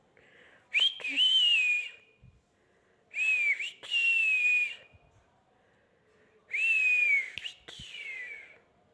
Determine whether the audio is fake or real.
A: real